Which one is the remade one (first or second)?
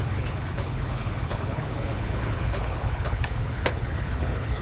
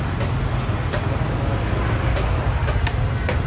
first